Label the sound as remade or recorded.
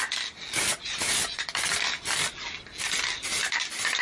recorded